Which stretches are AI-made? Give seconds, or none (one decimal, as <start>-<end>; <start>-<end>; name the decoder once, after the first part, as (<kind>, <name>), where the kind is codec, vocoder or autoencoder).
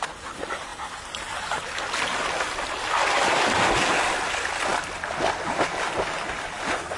4.7-5.2 (vocoder, BigVGAN v2)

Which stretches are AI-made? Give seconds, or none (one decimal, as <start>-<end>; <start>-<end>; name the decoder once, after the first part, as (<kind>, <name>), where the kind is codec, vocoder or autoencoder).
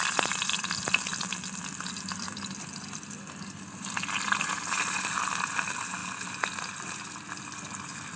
none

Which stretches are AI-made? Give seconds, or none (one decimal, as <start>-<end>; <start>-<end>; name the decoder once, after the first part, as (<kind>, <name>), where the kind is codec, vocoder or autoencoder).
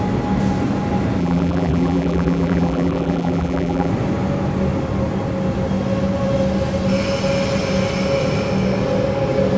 1.2-3.9 (vocoder, BigVGAN v2)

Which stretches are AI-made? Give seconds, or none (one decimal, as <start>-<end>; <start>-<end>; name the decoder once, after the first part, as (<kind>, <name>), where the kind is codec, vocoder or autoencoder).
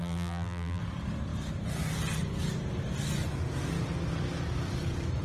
0.0-0.8 (vocoder, BigVGAN v2)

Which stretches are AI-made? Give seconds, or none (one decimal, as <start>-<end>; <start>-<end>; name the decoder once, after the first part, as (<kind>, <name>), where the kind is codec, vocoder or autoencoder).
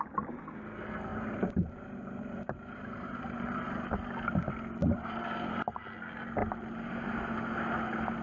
1.1-4.1 (vocoder, BigVGAN v2); 4.8-5.8; 6.4-7.2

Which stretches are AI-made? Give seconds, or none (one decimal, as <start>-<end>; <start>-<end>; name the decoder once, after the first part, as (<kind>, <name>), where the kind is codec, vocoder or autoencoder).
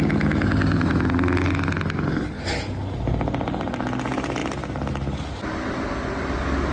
none